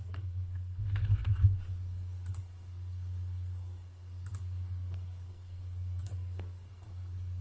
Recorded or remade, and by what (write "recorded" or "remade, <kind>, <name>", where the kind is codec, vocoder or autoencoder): remade, codec, SNAC